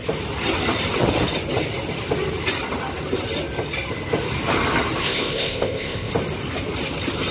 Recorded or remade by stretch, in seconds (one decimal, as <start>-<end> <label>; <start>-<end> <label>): 0.0-5.0 recorded; 5.0-6.1 remade; 6.1-7.3 recorded